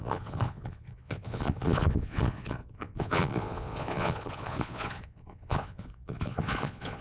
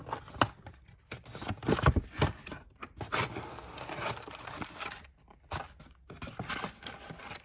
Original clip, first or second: second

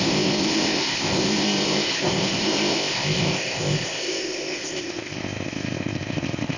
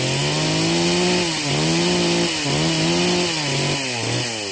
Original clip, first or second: second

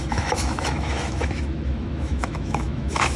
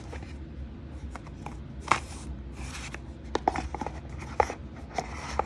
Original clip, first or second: second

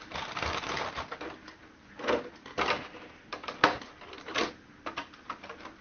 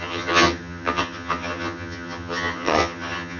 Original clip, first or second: first